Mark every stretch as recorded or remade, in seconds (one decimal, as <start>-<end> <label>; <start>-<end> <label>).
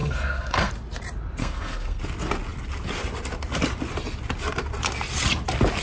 0.0-0.7 remade; 0.7-1.4 recorded; 1.4-2.0 remade; 2.0-5.8 recorded